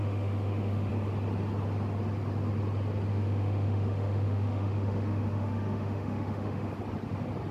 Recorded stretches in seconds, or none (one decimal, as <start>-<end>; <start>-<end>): 0.9-3.1; 6.7-7.5